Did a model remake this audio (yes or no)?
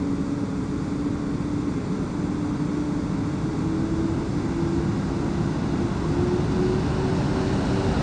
no